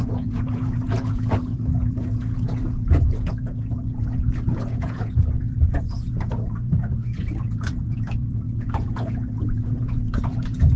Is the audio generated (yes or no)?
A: yes